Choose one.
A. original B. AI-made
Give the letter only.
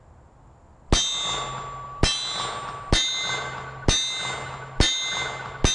A